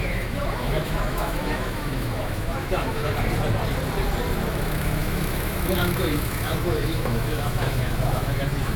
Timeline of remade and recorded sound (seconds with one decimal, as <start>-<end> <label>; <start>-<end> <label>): 0.0-3.0 remade; 3.0-4.5 recorded; 4.5-8.8 remade